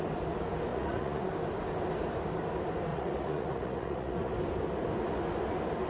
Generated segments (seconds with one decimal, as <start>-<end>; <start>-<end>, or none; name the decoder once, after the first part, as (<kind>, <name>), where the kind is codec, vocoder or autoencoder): 0.7-1.3 (vocoder, Vocos); 2.9-4.3